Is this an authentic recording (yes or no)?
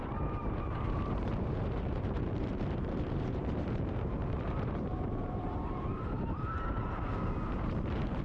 no